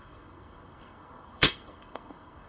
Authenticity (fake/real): fake